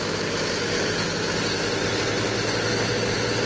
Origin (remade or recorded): recorded